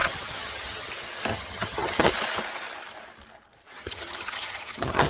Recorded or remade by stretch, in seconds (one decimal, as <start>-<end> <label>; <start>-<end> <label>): 0.0-0.9 remade; 0.9-1.3 recorded; 1.3-2.1 remade; 2.1-3.8 recorded; 3.8-5.1 remade